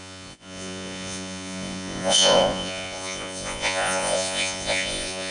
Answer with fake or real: fake